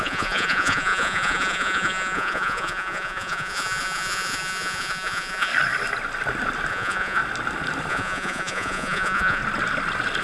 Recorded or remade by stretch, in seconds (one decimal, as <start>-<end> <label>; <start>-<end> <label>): 0.0-5.5 remade; 5.5-6.7 recorded; 6.7-7.2 remade; 7.2-7.9 recorded; 7.9-9.4 remade; 9.4-10.2 recorded